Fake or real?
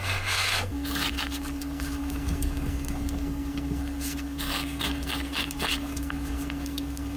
fake